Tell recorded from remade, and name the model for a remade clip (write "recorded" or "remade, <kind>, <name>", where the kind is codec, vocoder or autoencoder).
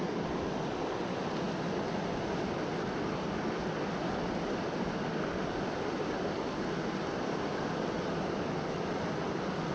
recorded